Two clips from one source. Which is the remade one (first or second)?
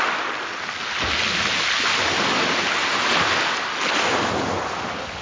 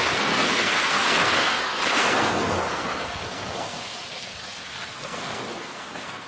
second